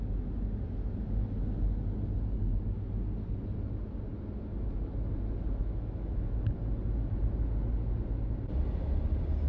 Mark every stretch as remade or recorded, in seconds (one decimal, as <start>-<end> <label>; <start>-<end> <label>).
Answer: 0.0-5.6 recorded; 5.6-6.3 remade; 6.3-9.5 recorded